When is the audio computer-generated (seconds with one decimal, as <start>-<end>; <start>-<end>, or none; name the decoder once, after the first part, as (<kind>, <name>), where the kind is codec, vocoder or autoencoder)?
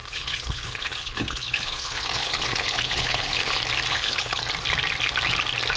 0.0-3.5 (codec, HILCodec); 3.9-4.4